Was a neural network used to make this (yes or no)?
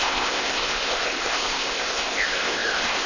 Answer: yes